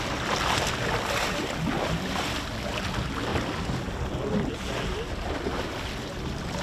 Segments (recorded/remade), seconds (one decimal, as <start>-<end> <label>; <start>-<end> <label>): 0.0-6.6 recorded